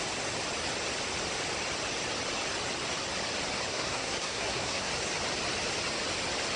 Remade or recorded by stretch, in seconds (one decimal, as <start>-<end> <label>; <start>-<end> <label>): 0.0-3.7 recorded; 3.7-4.9 remade; 4.9-6.6 recorded